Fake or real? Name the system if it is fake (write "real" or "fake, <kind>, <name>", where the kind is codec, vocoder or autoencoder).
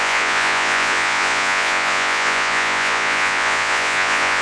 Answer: fake, vocoder, Vocos